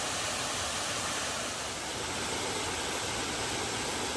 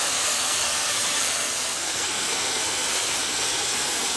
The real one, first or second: first